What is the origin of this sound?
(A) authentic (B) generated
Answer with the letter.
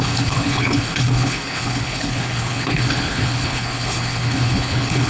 B